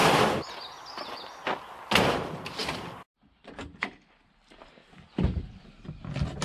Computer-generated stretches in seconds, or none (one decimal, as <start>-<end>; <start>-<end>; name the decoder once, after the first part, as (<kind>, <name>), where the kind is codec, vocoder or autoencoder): none